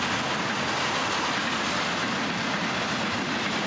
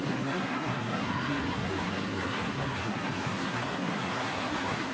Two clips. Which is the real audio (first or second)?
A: first